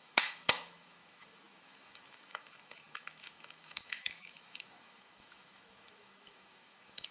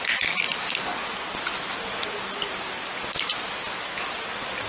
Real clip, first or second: second